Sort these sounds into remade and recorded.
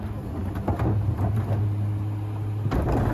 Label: recorded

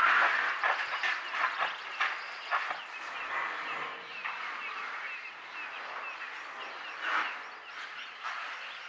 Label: recorded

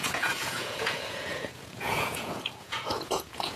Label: remade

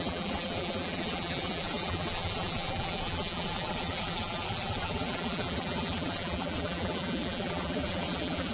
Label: remade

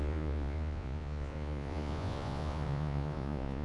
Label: remade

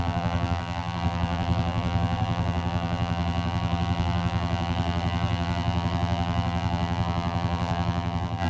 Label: remade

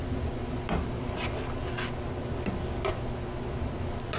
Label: recorded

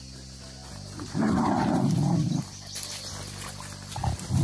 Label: remade